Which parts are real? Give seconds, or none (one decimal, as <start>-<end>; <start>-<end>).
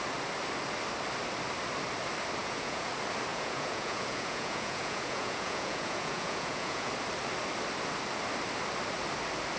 0.0-2.4; 2.9-3.3; 6.9-9.6